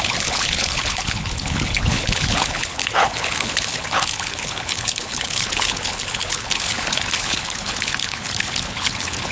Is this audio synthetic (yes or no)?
yes